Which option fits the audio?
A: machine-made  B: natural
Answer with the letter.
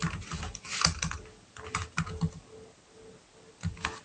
B